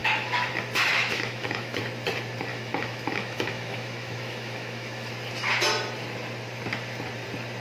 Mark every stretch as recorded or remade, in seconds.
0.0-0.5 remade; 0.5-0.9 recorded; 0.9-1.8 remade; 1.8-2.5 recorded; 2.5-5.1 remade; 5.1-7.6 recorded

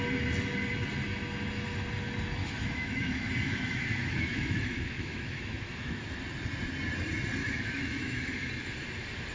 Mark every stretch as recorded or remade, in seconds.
0.0-2.4 recorded; 2.4-6.0 remade; 6.0-7.4 recorded; 7.4-8.5 remade; 8.5-9.3 recorded

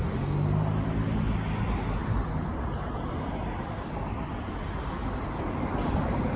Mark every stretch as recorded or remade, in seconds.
0.0-6.4 recorded

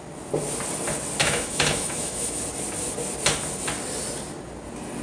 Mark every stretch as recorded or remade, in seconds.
0.0-1.2 recorded; 1.2-2.4 remade; 2.4-5.0 recorded